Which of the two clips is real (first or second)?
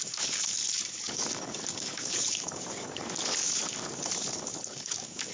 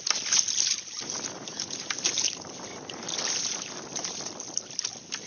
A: second